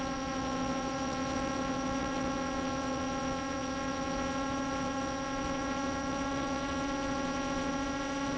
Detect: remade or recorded remade